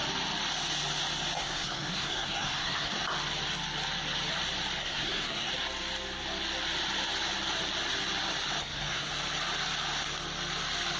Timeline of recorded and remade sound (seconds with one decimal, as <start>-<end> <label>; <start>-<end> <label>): 0.0-1.4 recorded; 1.4-3.0 remade; 3.0-4.8 recorded; 4.8-5.5 remade; 5.5-8.6 recorded; 8.6-9.1 remade; 9.1-11.0 recorded